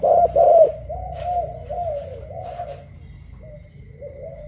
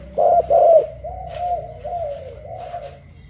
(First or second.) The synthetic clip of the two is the first